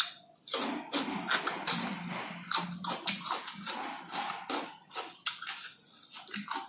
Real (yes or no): yes